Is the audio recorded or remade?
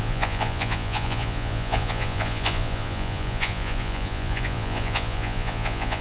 remade